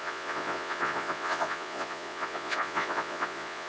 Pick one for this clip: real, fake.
fake